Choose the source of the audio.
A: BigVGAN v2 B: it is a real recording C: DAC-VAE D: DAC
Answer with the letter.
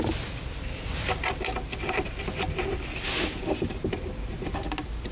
B